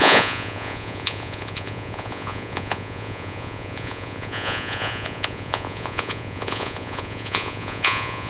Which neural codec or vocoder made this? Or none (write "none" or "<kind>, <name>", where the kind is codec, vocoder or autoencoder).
vocoder, Vocos